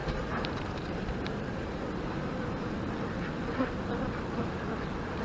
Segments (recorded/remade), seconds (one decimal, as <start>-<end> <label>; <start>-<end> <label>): 0.0-2.7 remade; 2.7-5.2 recorded